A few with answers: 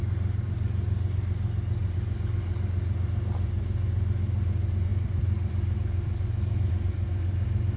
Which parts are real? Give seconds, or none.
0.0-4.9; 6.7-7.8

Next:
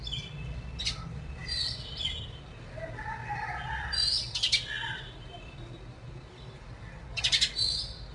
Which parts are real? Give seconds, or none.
0.0-8.1

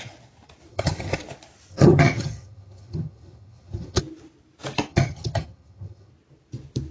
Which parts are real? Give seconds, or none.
0.0-0.7; 1.2-1.7; 4.0-4.9; 6.1-6.9